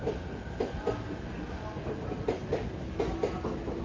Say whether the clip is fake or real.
real